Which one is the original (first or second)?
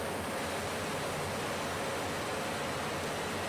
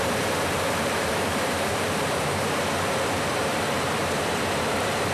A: first